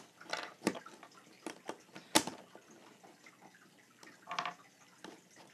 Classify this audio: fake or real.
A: real